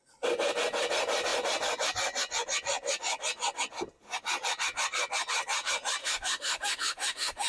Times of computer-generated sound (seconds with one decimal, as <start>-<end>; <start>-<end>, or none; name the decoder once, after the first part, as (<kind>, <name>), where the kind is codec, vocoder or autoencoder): 6.0-7.5 (autoencoder, DAC-VAE)